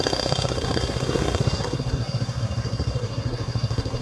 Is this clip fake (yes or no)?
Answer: yes